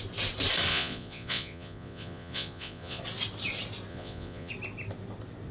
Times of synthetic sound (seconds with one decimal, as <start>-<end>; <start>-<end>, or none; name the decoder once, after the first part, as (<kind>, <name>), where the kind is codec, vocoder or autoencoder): 0.7-3.0 (vocoder, Vocos); 3.9-4.5

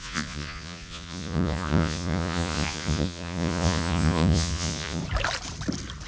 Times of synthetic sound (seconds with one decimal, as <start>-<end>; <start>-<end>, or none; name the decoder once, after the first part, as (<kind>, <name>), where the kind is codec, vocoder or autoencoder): 0.0-5.0 (vocoder, Vocos)

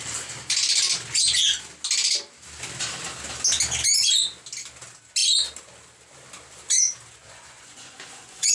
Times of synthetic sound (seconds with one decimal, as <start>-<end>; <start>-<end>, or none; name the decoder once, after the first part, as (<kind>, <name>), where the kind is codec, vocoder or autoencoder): 7.2-8.5 (vocoder, Vocos)

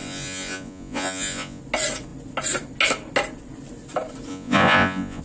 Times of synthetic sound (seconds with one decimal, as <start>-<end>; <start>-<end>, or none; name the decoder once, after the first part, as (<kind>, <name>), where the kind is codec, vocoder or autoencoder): 0.0-1.6 (vocoder, Vocos); 4.3-5.2

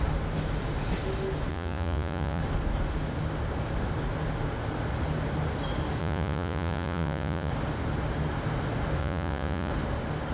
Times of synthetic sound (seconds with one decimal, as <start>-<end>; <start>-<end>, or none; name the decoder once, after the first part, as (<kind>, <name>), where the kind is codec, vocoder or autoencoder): 1.5-2.4 (vocoder, Vocos); 6.0-7.5; 9.0-9.7

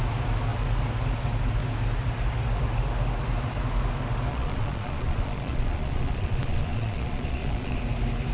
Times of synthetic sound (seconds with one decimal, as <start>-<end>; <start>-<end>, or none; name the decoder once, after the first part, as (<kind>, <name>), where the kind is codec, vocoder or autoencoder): 4.3-7.8 (vocoder, Vocos)

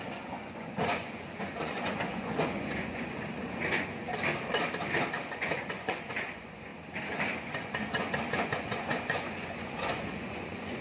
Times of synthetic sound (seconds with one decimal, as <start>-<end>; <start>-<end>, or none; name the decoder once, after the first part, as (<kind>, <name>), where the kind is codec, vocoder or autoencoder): 0.0-4.1 (vocoder, Vocos); 5.3-6.7; 7.5-10.8